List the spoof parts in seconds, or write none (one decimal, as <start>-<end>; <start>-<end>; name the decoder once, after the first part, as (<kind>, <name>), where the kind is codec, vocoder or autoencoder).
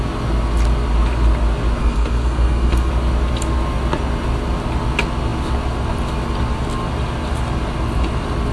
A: 1.8-2.9 (codec, SNAC)